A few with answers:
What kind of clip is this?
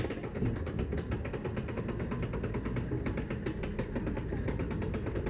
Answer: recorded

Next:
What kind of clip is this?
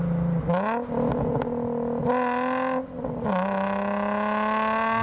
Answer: recorded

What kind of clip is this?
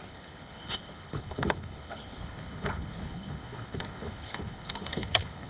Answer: remade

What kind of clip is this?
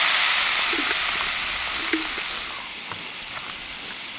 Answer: recorded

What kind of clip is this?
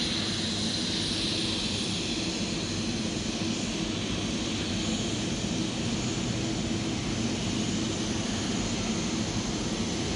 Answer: recorded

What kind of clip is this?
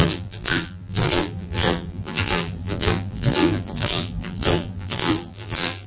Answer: remade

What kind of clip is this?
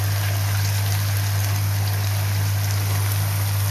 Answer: recorded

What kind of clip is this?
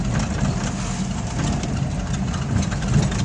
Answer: recorded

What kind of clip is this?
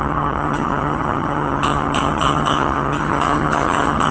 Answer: remade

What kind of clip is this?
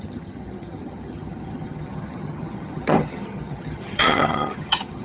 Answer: remade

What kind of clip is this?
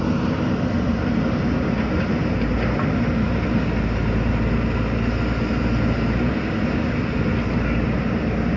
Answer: recorded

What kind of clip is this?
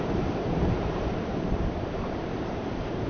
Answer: remade